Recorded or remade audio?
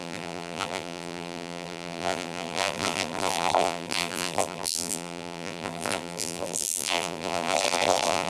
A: remade